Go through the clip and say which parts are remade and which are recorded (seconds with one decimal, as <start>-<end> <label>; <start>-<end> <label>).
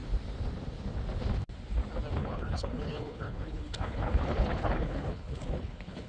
0.0-2.2 recorded; 2.2-6.1 remade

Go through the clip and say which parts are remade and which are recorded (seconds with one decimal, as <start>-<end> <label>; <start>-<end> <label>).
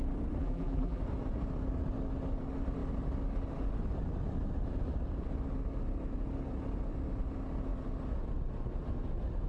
0.0-0.4 recorded; 0.4-1.0 remade; 1.0-9.5 recorded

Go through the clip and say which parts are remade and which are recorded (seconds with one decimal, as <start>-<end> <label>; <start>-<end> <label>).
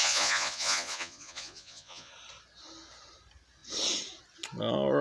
0.0-2.1 remade; 2.1-5.0 recorded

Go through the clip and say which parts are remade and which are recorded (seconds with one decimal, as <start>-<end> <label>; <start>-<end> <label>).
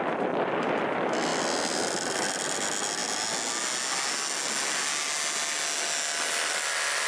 0.0-7.1 recorded